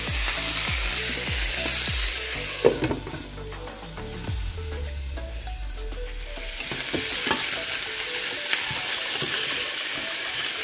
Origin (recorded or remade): recorded